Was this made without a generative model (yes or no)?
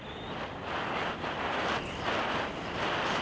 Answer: no